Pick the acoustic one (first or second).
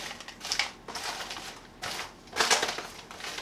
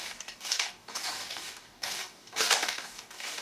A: first